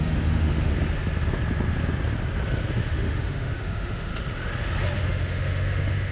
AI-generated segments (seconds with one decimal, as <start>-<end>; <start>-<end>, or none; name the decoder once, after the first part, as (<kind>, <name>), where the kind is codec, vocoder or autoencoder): 0.0-0.7 (autoencoder, DAC-VAE); 2.8-4.1; 5.0-6.1